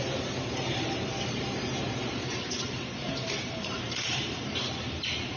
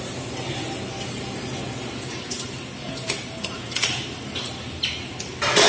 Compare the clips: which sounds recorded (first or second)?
second